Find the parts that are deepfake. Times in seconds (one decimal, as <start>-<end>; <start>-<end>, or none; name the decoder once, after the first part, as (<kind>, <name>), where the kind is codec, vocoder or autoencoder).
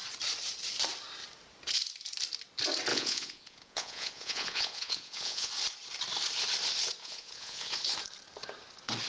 2.9-5.5 (vocoder, Vocos); 7.0-7.8